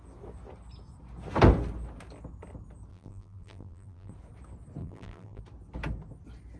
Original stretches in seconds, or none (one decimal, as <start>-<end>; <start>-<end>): 0.0-2.9; 4.1-4.8; 5.4-6.6